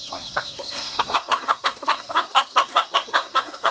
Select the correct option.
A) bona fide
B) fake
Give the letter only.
B